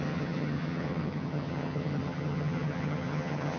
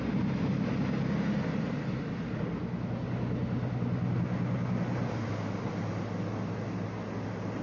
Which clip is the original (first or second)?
second